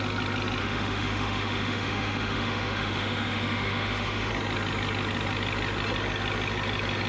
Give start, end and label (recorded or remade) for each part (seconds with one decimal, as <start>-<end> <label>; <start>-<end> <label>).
0.0-0.6 recorded; 0.6-4.3 remade; 4.3-7.1 recorded